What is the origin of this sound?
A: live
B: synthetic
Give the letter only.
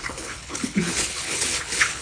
B